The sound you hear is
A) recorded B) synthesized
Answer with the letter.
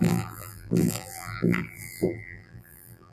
B